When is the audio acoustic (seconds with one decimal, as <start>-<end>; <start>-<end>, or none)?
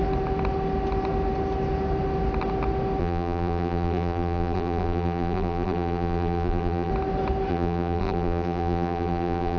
0.0-3.0; 6.9-7.5